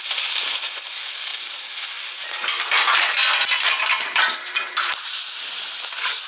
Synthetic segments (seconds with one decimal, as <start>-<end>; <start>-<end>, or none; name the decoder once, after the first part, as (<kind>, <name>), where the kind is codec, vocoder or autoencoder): none

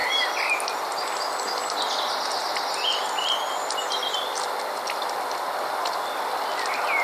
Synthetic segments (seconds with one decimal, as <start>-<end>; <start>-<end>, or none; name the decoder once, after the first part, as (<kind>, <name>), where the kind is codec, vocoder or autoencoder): none

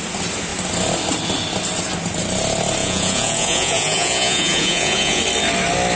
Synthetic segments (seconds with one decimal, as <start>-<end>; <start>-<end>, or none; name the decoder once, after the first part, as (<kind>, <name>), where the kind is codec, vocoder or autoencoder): 2.8-5.2 (vocoder, Vocos)